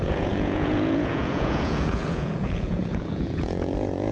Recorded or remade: remade